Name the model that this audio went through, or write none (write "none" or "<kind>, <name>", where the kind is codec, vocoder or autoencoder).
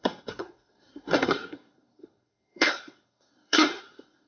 codec, SNAC